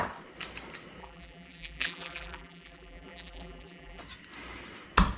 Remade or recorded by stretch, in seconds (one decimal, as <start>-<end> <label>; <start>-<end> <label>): 0.0-1.0 recorded; 1.0-4.0 remade; 4.0-5.2 recorded